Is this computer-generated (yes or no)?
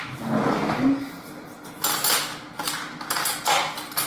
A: no